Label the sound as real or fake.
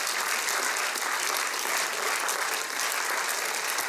real